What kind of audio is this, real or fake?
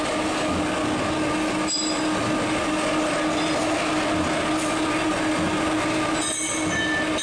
real